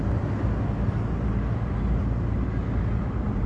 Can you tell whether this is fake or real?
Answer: real